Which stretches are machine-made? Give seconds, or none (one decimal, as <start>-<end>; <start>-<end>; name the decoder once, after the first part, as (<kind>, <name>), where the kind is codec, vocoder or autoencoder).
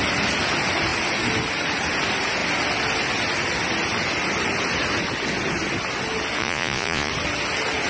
6.4-7.1 (vocoder, Vocos)